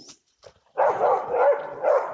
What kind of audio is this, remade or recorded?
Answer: recorded